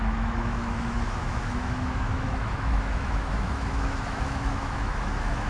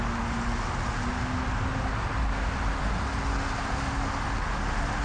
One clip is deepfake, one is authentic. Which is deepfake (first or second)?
first